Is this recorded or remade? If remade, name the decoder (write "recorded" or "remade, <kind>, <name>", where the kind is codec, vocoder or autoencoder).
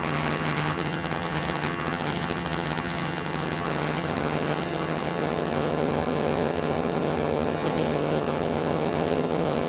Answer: remade, vocoder, HiFi-GAN